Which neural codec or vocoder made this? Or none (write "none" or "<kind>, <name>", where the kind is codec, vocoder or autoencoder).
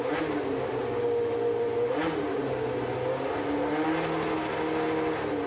none